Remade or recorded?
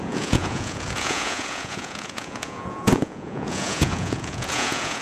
remade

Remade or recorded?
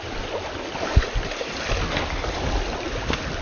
recorded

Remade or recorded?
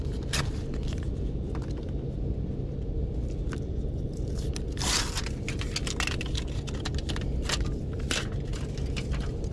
recorded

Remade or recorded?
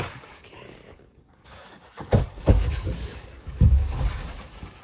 remade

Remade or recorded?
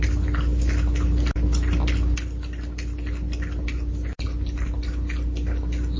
recorded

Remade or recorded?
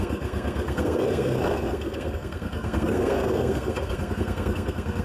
remade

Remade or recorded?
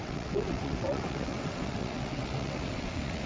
remade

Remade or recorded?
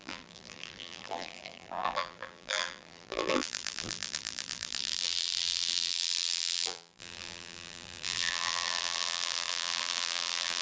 remade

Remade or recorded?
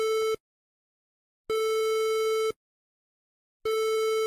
recorded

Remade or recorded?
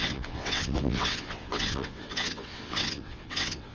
remade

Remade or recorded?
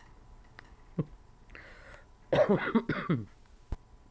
recorded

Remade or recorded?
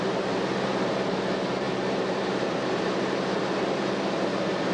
remade